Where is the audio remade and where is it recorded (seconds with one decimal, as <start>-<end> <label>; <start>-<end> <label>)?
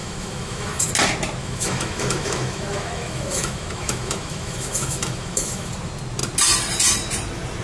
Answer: 0.0-0.9 remade; 0.9-1.4 recorded; 1.4-5.7 remade; 5.7-7.6 recorded